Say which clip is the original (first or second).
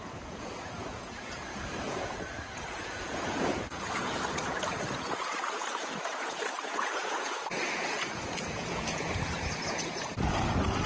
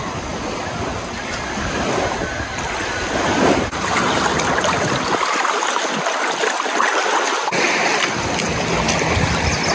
second